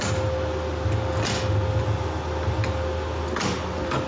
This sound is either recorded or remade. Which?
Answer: recorded